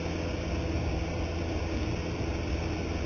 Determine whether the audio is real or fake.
real